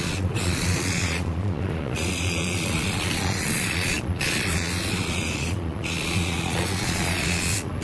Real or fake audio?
fake